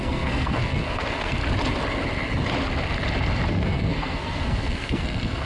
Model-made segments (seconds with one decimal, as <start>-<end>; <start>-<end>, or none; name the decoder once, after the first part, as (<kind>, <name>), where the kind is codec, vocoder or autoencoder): 0.0-1.4 (codec, SNAC); 3.5-5.5